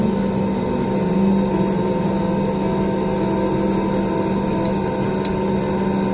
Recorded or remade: recorded